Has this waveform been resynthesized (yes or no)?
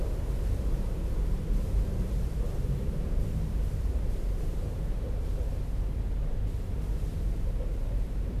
yes